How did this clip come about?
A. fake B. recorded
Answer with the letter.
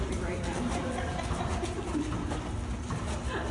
B